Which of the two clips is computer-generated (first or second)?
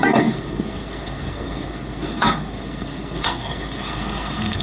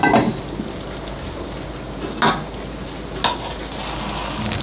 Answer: first